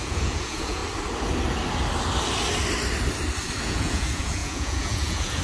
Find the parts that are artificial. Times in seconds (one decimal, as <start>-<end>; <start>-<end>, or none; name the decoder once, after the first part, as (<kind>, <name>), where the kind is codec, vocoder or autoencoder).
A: 0.0-0.8 (vocoder, Vocos); 3.6-5.4